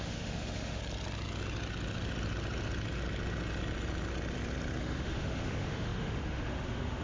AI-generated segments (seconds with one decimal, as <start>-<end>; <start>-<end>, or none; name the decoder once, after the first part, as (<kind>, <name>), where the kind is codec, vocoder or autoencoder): 0.0-0.8 (autoencoder, DAC-VAE); 4.8-7.0